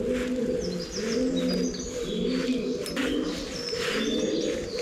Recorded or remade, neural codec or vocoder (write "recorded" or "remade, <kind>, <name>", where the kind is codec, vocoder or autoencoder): recorded